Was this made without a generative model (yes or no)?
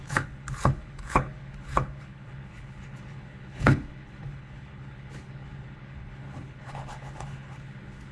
no